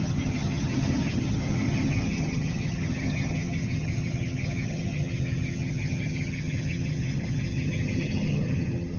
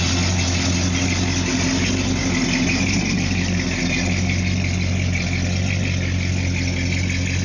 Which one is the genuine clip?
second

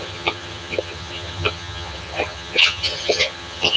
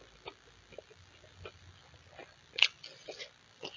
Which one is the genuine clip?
second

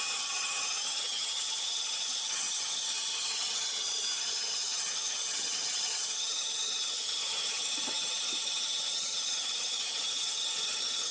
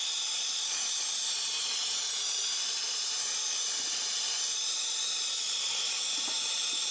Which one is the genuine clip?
second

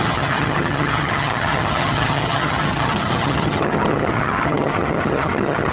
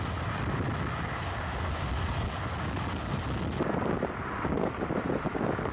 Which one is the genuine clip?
second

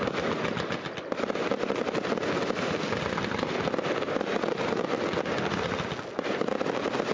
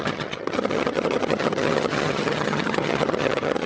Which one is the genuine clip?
first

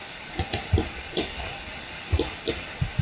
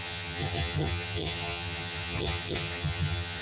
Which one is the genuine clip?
first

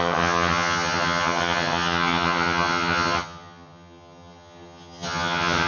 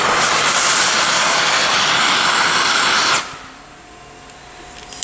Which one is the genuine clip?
second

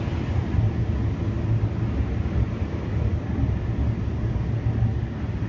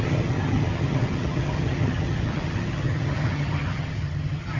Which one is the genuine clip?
first